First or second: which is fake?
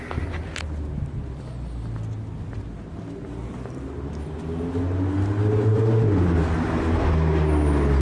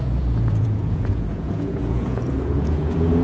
second